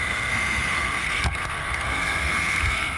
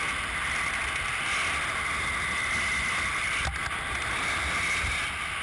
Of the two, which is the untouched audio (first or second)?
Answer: second